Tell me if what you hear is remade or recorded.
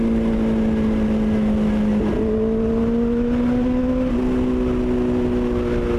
recorded